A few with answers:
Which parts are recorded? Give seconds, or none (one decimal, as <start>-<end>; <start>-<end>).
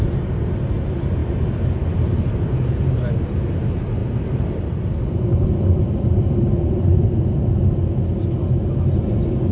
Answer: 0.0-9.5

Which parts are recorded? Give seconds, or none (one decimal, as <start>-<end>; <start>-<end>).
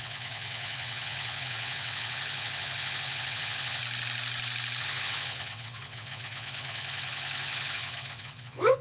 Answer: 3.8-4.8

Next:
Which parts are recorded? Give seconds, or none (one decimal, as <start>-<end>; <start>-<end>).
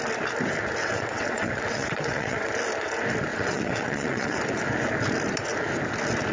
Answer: 0.0-0.8; 2.5-3.3; 4.4-6.3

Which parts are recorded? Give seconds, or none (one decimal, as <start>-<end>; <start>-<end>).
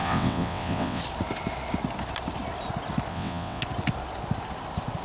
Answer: 1.0-3.1; 3.6-5.0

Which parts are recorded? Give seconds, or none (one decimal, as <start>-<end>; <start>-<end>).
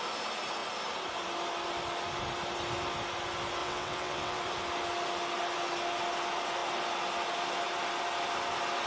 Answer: 0.0-3.6; 4.4-8.9